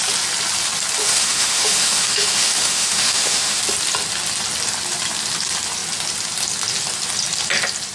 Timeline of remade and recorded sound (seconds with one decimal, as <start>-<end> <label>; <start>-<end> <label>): 0.0-1.0 recorded; 1.0-3.6 remade; 3.6-7.9 recorded